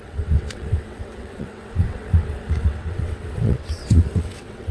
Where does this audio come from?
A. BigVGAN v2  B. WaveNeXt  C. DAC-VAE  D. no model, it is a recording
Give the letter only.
B